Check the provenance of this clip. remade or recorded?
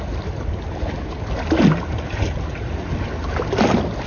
recorded